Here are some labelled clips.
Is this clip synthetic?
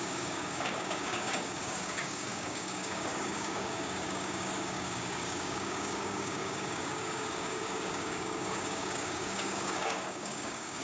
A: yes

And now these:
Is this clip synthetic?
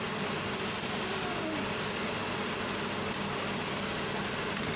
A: no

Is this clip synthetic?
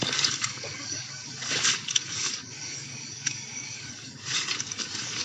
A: yes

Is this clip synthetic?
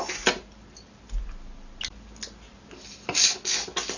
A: no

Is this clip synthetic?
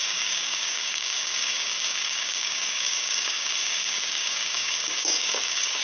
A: yes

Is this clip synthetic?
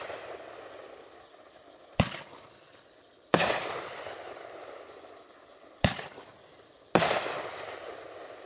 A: no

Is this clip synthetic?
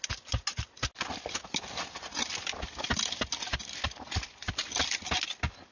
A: no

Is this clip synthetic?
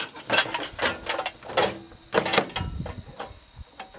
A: no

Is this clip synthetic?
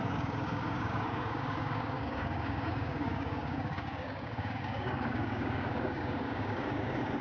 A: yes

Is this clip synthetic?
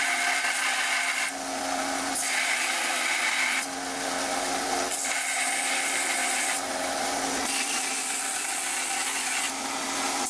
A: no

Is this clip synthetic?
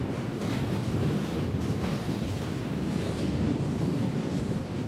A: yes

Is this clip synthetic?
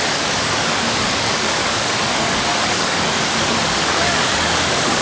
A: yes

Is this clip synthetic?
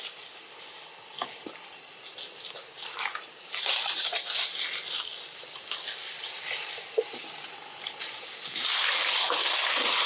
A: no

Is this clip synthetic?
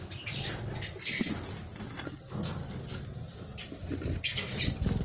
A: no